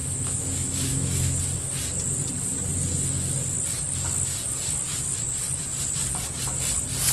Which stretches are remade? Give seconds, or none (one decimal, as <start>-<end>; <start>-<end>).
0.0-1.4